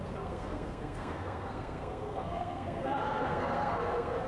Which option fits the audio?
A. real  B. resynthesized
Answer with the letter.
B